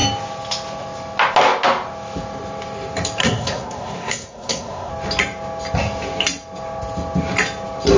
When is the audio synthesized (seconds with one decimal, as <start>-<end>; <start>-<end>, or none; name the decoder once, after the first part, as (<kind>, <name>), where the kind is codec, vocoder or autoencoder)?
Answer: 3.2-4.9 (codec, SNAC)